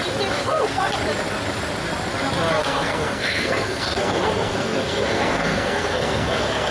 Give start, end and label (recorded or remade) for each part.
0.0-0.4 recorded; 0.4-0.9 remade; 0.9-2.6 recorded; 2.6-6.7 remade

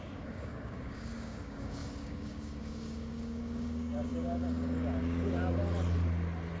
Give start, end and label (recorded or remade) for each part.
0.0-5.6 remade; 5.6-6.6 recorded

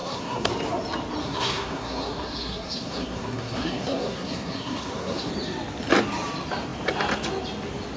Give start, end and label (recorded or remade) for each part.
0.0-0.5 remade; 0.5-1.2 recorded; 1.2-5.3 remade; 5.3-8.0 recorded

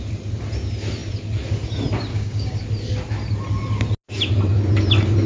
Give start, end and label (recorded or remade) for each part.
0.0-2.1 recorded; 2.1-2.6 remade; 2.6-5.3 recorded

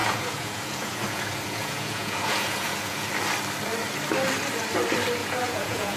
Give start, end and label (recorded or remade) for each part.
0.0-3.1 remade; 3.1-5.2 recorded; 5.2-6.0 remade

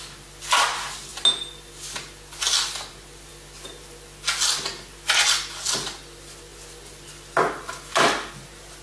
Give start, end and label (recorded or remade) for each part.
0.0-8.8 recorded